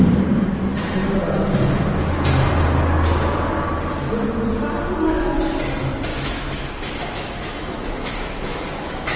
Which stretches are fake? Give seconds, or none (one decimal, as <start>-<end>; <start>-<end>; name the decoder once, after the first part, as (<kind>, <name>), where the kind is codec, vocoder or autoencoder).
6.1-9.2 (autoencoder, DAC-VAE)

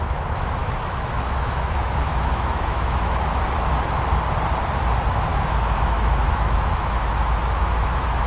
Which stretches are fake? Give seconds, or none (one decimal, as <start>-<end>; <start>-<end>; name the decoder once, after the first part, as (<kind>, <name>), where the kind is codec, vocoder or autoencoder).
0.6-3.7 (autoencoder, DAC-VAE); 5.3-8.3

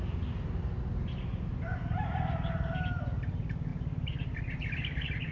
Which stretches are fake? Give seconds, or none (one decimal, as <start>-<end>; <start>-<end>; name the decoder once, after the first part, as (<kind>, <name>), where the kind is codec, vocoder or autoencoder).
none

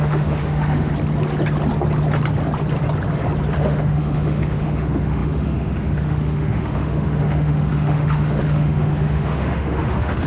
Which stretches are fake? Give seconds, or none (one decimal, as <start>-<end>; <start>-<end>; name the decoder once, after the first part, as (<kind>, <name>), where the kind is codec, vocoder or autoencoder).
0.0-0.9 (autoencoder, DAC-VAE); 3.6-10.3

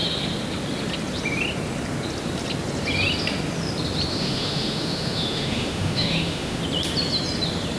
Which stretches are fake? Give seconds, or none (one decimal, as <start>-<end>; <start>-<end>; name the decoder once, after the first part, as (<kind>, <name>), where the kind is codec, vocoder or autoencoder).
4.1-6.6 (autoencoder, DAC-VAE)

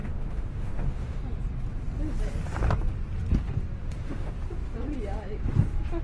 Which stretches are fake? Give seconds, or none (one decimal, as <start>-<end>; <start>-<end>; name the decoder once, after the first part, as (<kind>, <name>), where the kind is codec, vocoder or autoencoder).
0.0-1.2 (autoencoder, DAC-VAE); 3.8-4.3